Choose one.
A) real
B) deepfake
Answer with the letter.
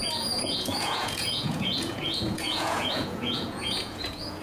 B